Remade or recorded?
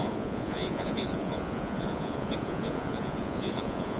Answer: remade